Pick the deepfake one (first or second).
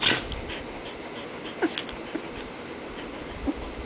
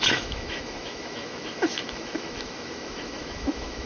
second